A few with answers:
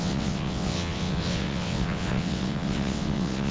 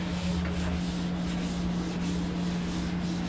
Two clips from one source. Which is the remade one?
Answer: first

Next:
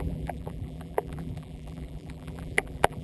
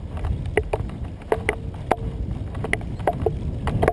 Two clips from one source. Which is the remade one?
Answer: first